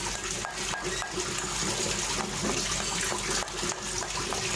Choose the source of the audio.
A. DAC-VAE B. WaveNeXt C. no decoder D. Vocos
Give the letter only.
C